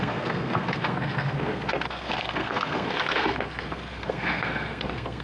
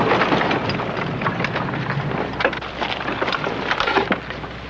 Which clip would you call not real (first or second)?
first